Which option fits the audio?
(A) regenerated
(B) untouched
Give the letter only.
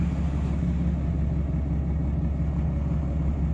B